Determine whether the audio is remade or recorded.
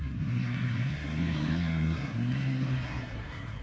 remade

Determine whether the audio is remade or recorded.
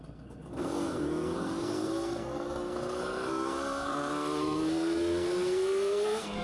remade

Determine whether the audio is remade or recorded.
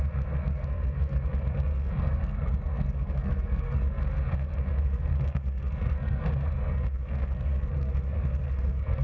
remade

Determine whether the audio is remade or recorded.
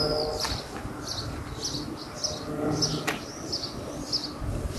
recorded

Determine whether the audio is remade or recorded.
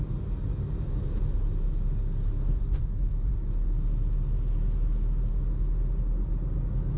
recorded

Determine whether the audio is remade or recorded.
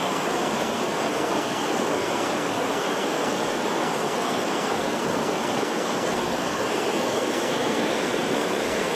remade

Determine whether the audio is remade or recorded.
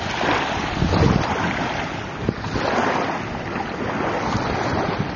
recorded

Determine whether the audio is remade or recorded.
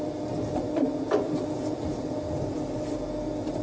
recorded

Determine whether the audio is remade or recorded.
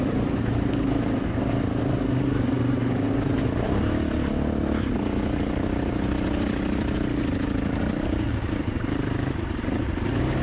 recorded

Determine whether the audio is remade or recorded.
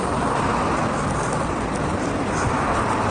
recorded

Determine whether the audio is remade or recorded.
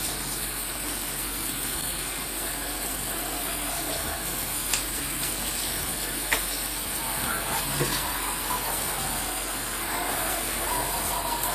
remade